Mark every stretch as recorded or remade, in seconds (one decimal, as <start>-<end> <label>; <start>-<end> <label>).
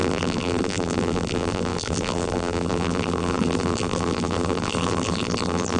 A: 0.0-5.8 remade